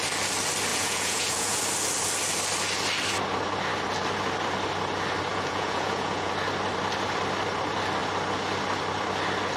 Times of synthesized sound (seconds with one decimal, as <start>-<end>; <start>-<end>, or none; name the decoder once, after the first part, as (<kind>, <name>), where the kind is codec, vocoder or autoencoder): 0.7-1.6 (vocoder, Vocos); 5.3-6.3